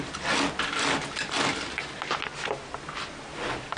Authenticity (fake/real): real